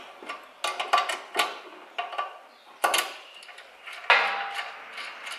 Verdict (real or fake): real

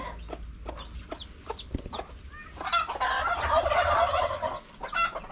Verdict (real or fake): real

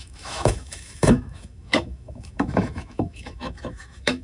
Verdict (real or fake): fake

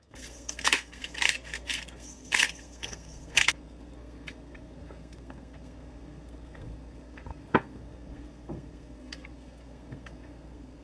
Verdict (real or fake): fake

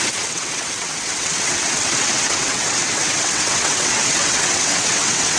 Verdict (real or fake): fake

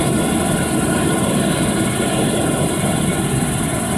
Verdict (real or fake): real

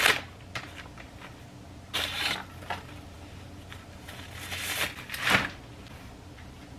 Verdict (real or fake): real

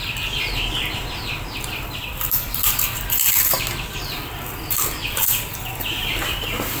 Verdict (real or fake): fake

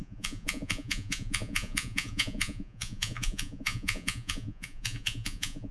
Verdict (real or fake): fake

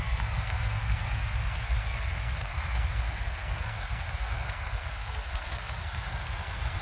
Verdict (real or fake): fake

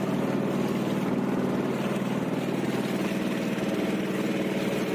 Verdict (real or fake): real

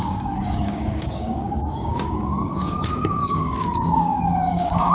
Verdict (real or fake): fake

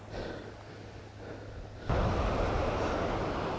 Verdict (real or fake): real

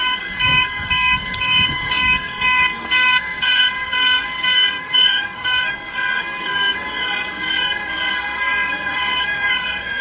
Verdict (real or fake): fake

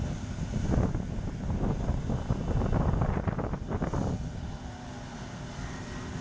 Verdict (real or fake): real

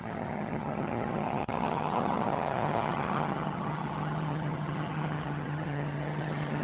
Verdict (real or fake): fake